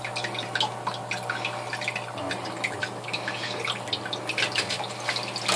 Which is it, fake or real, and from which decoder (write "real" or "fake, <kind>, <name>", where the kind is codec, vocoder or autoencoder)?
real